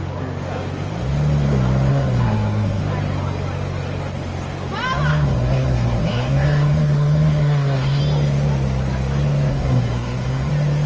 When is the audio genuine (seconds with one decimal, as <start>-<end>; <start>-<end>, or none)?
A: 0.0-1.9; 2.8-5.1; 8.0-9.5; 10.5-10.9